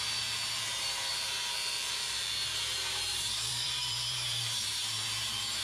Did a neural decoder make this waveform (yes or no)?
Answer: yes